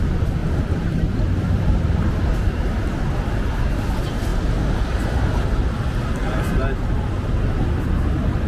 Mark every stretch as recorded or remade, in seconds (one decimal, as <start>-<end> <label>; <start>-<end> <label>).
0.0-8.5 recorded